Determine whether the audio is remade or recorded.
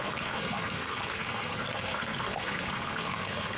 remade